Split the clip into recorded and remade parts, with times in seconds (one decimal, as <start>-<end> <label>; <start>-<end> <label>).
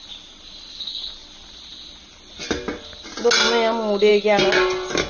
0.0-5.1 recorded